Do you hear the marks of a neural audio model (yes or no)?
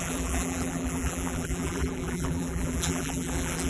yes